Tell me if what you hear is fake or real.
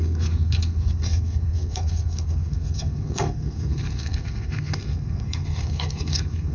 fake